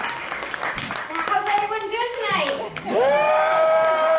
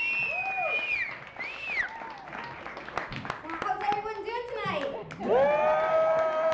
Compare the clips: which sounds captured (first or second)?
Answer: second